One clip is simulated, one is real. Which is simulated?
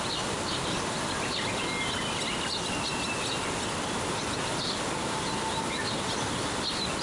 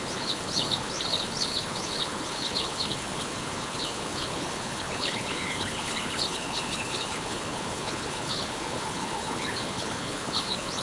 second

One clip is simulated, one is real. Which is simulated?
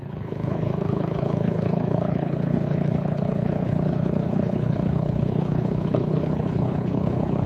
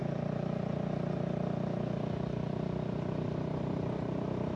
first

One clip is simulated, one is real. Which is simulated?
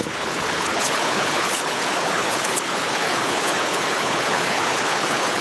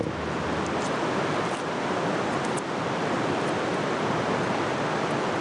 first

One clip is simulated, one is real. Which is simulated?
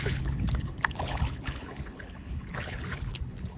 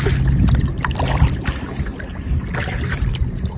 first